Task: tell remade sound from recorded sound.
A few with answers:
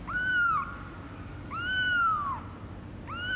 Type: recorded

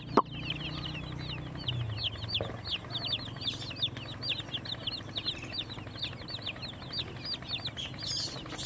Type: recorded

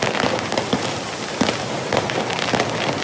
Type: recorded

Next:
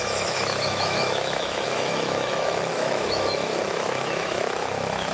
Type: remade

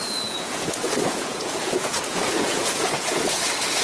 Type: remade